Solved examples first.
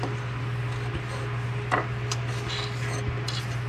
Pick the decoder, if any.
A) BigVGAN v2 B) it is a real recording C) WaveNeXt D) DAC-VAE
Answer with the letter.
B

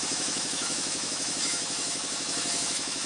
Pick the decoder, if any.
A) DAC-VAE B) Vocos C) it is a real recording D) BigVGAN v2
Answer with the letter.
A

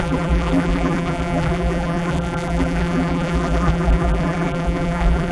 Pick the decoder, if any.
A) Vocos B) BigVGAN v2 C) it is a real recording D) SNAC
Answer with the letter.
B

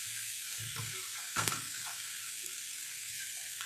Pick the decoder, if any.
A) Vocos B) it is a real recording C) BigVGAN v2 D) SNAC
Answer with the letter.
D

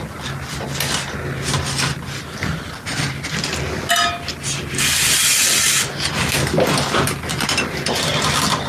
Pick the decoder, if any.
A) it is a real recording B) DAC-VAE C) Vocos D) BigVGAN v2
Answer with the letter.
A